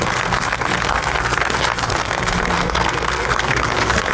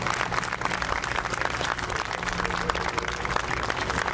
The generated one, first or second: first